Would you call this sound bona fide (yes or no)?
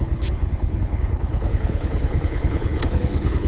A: no